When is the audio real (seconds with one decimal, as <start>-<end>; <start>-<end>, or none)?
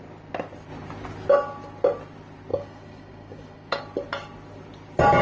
0.0-2.5; 3.8-5.2